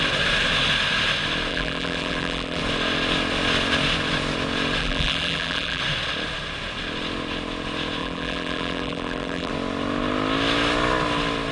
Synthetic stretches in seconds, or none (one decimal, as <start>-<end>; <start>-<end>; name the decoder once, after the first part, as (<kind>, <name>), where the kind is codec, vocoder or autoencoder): 1.5-2.6 (vocoder, BigVGAN v2); 4.8-5.8; 8.0-9.5